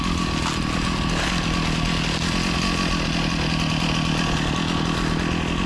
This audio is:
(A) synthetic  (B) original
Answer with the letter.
B